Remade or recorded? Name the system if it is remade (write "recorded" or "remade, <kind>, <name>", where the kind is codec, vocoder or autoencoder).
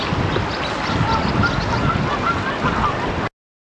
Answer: recorded